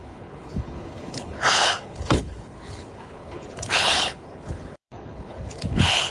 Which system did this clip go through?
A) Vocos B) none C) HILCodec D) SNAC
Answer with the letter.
C